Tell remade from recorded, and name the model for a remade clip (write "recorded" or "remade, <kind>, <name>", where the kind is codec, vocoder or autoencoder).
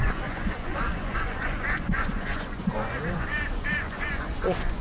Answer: remade, vocoder, Vocos